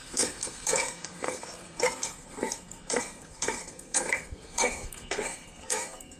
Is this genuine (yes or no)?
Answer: no